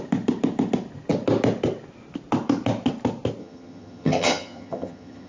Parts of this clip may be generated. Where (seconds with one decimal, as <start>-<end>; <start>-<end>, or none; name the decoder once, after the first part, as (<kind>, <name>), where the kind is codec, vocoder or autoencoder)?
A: 3.4-5.3 (vocoder, HiFi-GAN)